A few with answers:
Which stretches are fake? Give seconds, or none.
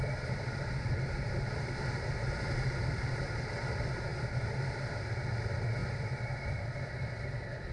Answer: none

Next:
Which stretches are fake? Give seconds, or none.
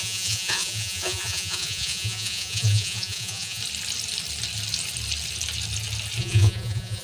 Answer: 0.0-3.6 (vocoder, Vocos); 6.2-7.0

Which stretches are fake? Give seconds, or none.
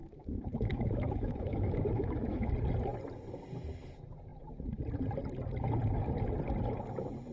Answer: 0.0-2.5 (autoencoder, DAC-VAE)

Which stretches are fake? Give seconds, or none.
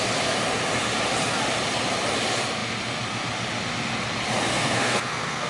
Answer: 4.5-5.5 (codec, SNAC)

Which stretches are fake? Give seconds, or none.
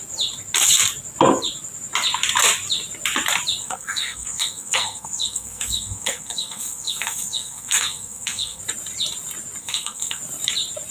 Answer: 3.6-8.6 (codec, SNAC); 9.6-10.2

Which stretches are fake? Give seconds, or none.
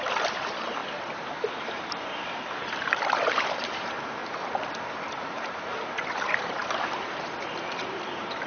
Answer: 0.0-0.8 (vocoder, BigVGAN v2); 1.5-8.5